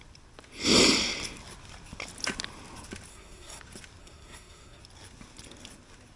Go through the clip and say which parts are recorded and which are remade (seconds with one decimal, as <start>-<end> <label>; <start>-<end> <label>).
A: 0.0-3.1 recorded; 3.1-3.6 remade; 3.6-4.0 recorded; 4.0-4.8 remade; 4.8-6.2 recorded